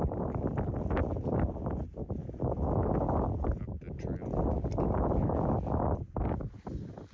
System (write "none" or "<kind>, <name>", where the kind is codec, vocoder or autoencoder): none